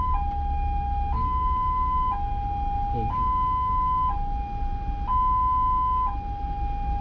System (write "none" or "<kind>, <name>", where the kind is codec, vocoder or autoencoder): none